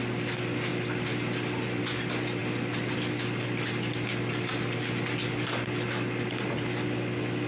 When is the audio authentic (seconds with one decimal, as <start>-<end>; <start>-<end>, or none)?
0.0-7.5